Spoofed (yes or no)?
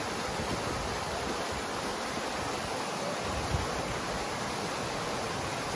no